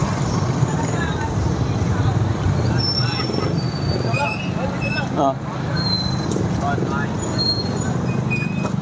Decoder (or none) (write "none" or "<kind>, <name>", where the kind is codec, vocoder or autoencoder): none